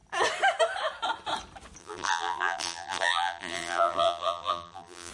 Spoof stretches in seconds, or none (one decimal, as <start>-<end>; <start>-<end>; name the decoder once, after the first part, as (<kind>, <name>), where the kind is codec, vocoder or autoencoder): 1.8-5.1 (vocoder, BigVGAN v2)